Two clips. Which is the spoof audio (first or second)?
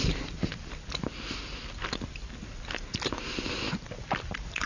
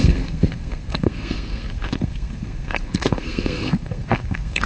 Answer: second